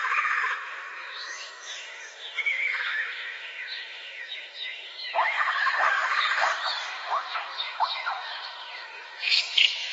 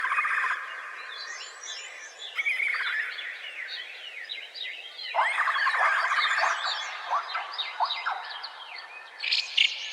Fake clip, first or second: first